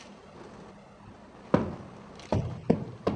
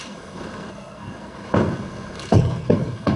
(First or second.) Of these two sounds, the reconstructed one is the second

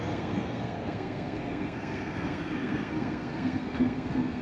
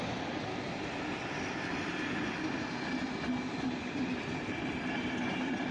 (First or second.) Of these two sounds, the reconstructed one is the first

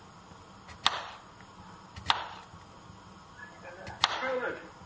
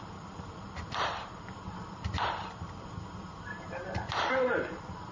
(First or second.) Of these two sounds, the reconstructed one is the second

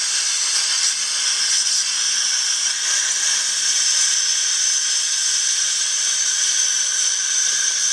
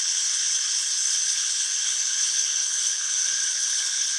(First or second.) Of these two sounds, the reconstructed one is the second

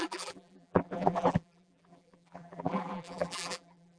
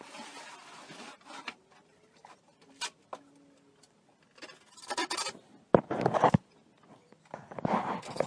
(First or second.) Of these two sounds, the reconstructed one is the first